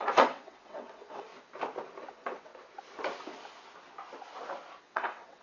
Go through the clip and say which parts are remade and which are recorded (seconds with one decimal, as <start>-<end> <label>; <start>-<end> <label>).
0.0-1.3 remade; 1.3-2.1 recorded; 2.1-2.5 remade; 2.5-4.8 recorded; 4.8-5.4 remade